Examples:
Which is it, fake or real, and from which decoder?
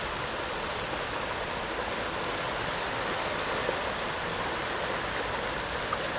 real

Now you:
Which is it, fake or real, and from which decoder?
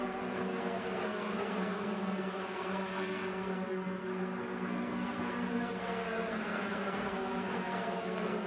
fake, codec, SNAC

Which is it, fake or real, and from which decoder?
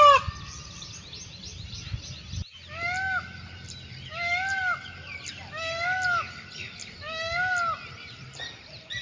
real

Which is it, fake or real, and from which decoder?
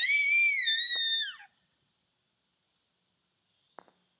real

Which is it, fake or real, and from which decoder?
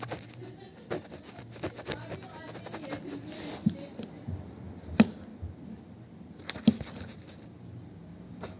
real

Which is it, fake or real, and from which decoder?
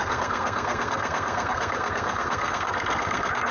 fake, codec, SNAC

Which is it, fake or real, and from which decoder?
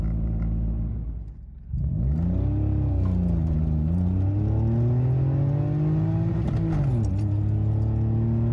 real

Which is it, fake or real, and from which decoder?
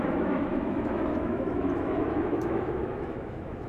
fake, autoencoder, DAC-VAE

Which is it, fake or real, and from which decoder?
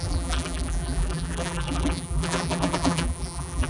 fake, vocoder, BigVGAN v2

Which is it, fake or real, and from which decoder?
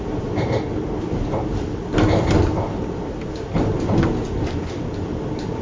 real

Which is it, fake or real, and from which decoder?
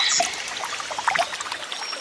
real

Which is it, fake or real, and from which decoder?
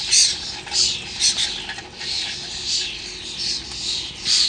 real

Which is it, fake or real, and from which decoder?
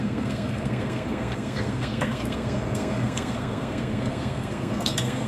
fake, codec, SNAC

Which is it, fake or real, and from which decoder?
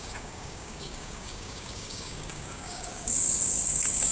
fake, codec, DAC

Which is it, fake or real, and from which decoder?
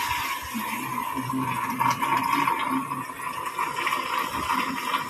real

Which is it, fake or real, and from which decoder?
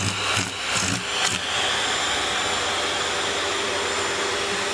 real